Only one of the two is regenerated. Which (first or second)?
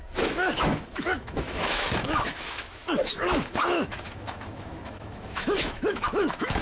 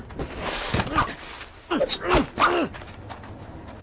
first